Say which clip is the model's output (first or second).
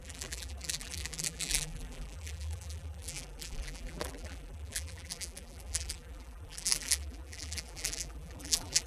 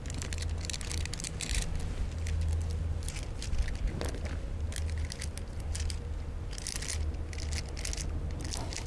first